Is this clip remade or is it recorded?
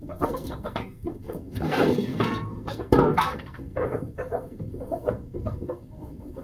remade